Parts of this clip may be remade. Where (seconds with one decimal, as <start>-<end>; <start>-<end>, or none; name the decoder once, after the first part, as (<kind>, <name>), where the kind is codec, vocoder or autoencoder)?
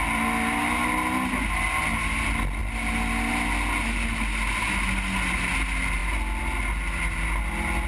none